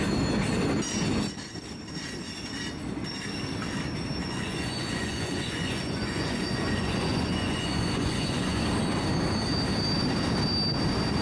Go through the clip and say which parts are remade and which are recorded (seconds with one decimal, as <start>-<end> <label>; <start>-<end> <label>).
0.0-4.2 recorded; 4.2-8.6 remade; 8.6-11.2 recorded